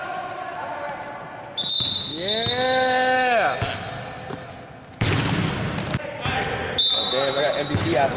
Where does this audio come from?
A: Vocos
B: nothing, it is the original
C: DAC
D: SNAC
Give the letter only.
B